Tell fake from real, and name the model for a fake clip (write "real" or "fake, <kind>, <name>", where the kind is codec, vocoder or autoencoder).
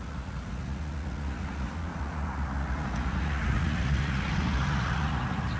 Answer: fake, vocoder, Vocos